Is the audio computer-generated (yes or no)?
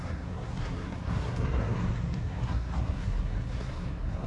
yes